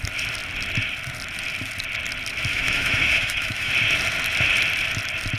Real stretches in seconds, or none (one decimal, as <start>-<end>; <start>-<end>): 0.0-2.5; 3.7-5.4